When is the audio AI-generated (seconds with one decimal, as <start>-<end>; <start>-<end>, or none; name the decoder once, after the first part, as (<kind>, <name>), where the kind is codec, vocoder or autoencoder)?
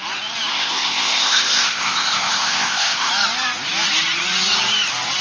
0.5-3.1 (codec, ZipCodec)